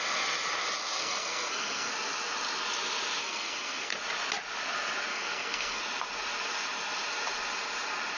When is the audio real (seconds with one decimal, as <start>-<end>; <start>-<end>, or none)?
0.0-1.0; 1.9-3.2; 3.9-5.1; 5.8-8.2